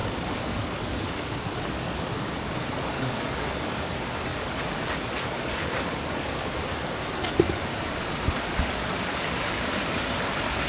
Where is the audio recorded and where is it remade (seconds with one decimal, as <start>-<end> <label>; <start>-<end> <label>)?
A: 0.0-7.7 remade; 7.7-8.7 recorded; 8.7-10.7 remade